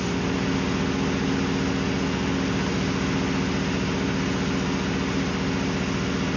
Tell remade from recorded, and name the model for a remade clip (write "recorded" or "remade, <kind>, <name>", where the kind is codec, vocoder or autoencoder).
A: recorded